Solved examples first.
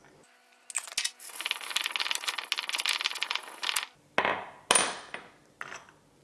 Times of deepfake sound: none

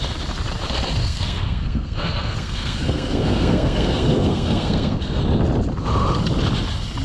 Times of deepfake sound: 1.0-5.2

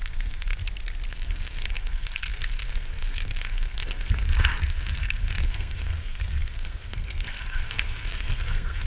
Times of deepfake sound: 0.0-0.6; 1.1-8.9

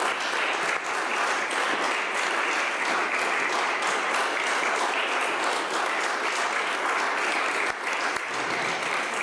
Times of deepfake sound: none

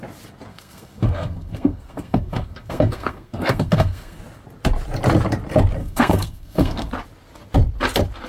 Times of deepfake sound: 0.5-4.2; 5.8-6.9

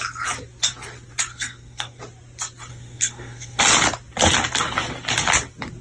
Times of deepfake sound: 1.3-2.0; 2.7-3.6